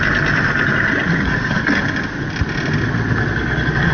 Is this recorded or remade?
recorded